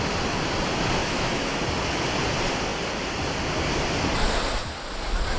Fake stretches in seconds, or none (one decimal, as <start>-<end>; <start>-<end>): 1.0-1.6